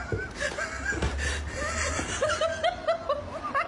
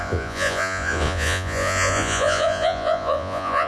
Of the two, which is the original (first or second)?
first